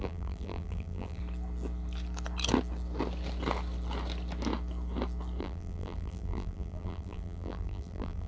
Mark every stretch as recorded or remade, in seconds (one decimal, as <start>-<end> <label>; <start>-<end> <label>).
0.0-1.2 remade; 1.2-5.4 recorded; 5.4-8.3 remade